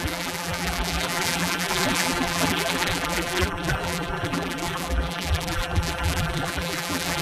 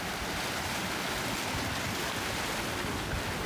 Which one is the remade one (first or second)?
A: first